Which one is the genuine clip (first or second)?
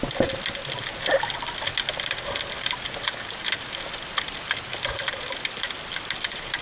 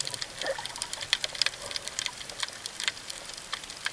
first